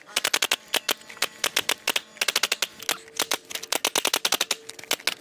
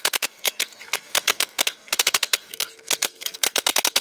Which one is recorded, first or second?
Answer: first